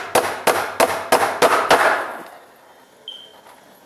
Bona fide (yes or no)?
yes